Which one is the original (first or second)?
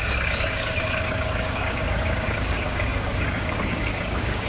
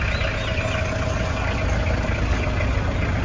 second